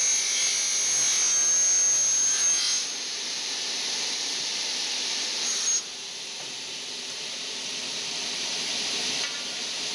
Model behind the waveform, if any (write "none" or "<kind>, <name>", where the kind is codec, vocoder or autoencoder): none